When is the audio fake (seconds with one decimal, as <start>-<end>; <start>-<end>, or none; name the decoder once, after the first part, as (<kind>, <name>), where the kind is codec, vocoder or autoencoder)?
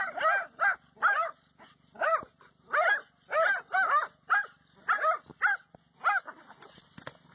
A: none